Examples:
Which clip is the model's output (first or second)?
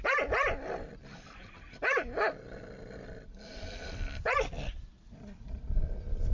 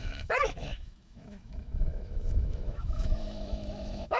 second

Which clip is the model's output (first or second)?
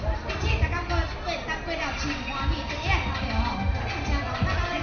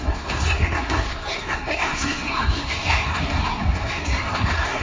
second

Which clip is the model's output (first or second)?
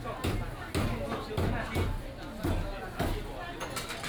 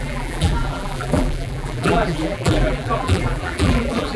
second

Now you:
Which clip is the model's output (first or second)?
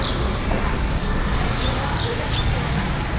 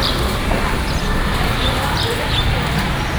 second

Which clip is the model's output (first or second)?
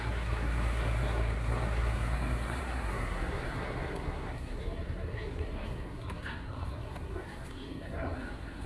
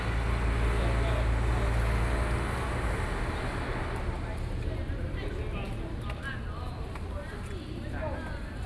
first